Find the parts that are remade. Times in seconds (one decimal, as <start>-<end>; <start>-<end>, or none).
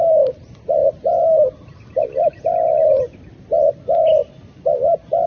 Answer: none